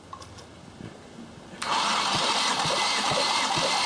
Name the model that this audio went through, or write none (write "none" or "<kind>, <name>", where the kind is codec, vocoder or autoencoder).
none